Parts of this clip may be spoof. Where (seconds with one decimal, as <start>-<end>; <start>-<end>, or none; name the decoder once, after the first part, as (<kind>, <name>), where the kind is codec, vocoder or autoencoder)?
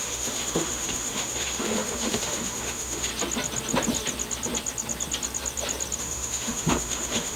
0.0-3.1 (autoencoder, DAC-VAE); 6.0-7.4